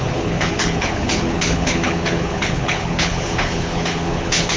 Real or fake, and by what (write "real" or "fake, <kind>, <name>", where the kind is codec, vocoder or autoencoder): fake, codec, HILCodec